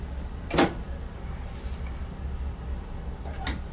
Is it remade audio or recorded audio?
recorded